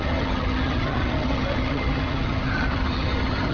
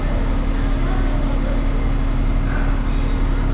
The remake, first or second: first